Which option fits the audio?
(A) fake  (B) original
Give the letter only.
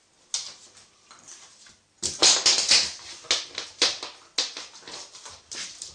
B